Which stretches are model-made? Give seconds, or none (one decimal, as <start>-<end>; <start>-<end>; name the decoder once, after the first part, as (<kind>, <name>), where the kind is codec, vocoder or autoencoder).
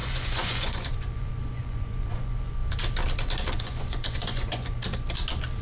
0.0-2.6 (vocoder, Vocos); 3.6-4.8